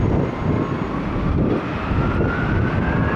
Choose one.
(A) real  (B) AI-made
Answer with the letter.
A